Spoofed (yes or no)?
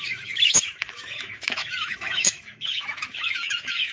yes